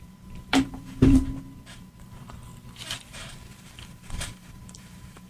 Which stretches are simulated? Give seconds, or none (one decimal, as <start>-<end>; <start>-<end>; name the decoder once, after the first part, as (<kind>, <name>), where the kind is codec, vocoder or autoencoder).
0.0-1.2 (vocoder, BigVGAN v2); 1.7-2.5; 3.1-5.3